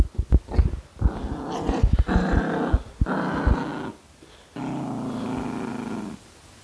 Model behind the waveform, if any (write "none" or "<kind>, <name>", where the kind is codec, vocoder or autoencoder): none